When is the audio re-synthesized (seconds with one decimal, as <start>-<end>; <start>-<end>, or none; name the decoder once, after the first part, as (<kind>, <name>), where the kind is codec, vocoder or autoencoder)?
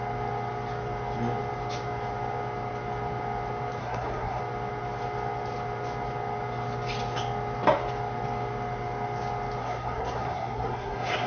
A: 3.8-4.4 (codec, SNAC); 9.6-11.3